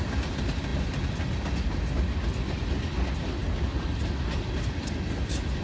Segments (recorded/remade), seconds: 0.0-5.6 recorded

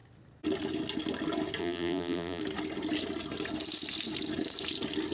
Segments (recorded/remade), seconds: 0.0-1.6 recorded; 1.6-2.4 remade; 2.4-5.1 recorded

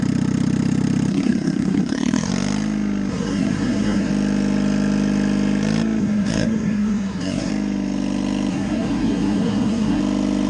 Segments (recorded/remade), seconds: 0.0-1.1 recorded; 1.1-2.3 remade; 2.3-3.1 recorded; 3.1-4.1 remade; 4.1-6.0 recorded; 6.0-7.5 remade; 7.5-8.5 recorded; 8.5-10.0 remade; 10.0-10.5 recorded